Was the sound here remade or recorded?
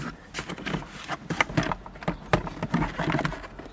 recorded